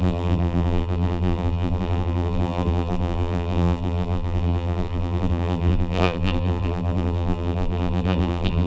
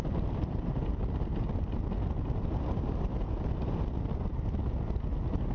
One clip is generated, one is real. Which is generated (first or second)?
first